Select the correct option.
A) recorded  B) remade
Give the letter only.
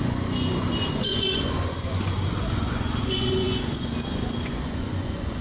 B